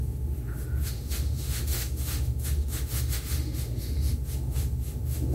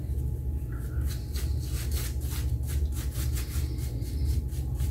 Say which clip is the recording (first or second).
second